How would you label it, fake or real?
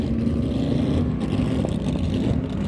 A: real